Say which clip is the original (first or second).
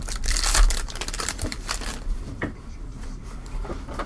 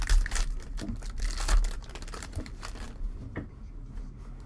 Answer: second